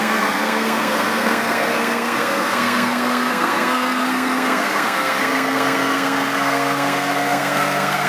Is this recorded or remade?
remade